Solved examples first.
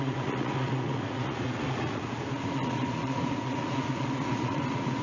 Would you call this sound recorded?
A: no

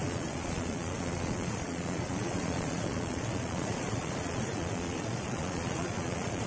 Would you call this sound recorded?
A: no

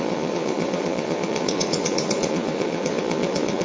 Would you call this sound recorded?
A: no